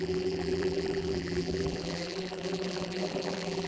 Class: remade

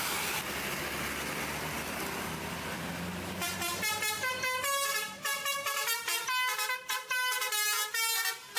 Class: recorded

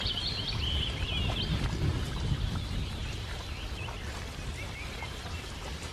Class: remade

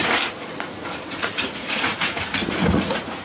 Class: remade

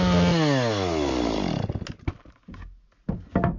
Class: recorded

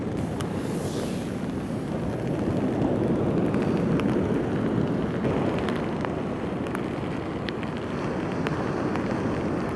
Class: recorded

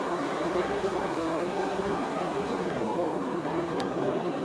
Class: remade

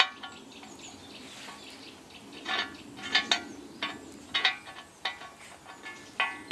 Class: recorded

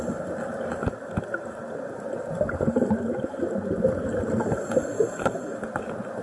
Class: recorded